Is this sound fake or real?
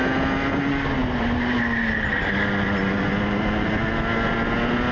real